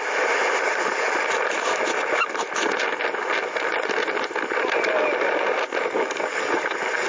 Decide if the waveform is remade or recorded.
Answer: recorded